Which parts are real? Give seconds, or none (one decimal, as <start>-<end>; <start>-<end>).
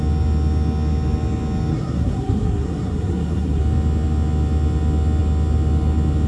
0.0-1.7; 3.6-6.3